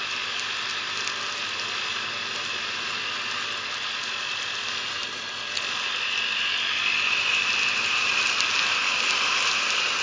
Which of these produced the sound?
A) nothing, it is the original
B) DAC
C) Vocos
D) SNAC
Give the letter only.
A